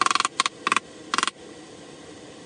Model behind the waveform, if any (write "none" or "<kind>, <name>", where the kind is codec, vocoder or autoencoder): none